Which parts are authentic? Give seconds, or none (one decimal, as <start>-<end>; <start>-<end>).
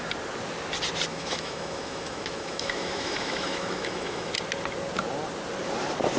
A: 0.0-1.1; 4.3-6.2